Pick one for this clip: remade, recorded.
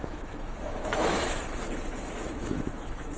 remade